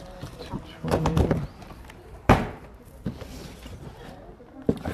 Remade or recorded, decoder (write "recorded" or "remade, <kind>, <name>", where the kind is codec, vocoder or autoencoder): remade, vocoder, BigVGAN v2